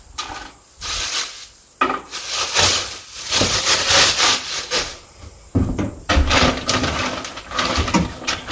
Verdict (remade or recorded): recorded